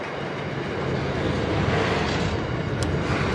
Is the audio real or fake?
real